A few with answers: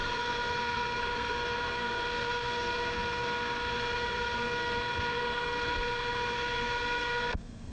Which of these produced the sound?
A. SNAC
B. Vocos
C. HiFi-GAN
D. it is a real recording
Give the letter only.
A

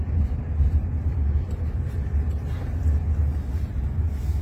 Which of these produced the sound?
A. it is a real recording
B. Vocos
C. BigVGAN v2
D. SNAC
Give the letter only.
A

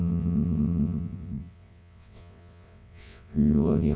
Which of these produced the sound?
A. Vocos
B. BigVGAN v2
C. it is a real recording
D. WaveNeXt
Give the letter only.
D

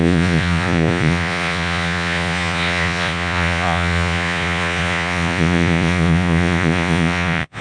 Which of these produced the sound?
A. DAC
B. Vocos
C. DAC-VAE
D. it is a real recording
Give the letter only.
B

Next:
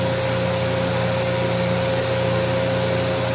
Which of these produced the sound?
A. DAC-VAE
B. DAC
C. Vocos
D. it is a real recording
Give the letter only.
D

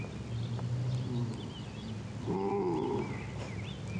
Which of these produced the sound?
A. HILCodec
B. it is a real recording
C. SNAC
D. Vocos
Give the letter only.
B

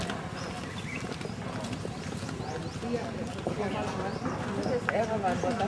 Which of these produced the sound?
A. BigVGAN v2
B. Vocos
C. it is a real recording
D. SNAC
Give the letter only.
C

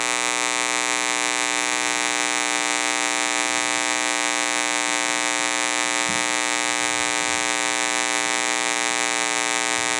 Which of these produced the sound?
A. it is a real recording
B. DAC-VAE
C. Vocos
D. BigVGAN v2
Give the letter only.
A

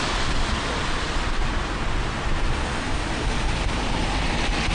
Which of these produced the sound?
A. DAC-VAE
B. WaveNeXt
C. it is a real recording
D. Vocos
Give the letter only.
C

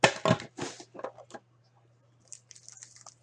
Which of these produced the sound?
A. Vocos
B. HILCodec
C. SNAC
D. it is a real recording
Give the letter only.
D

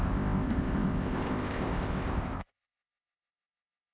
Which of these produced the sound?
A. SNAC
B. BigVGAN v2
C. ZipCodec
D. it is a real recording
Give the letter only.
C